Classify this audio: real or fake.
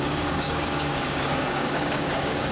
fake